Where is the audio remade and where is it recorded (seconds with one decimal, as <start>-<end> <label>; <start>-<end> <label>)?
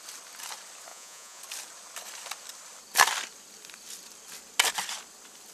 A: 0.0-0.9 recorded; 0.9-1.4 remade; 1.4-5.5 recorded